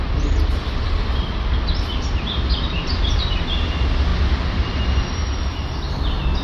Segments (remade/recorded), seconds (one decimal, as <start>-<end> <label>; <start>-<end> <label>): 0.0-6.4 recorded